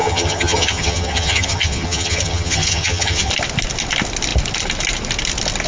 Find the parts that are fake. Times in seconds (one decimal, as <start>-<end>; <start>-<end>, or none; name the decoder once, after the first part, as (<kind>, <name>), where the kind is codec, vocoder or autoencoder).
0.0-3.3 (vocoder, HiFi-GAN)